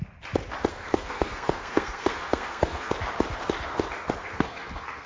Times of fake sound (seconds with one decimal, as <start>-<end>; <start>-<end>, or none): 0.7-2.9; 4.2-5.1